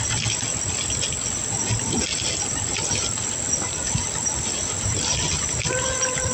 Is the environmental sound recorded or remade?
recorded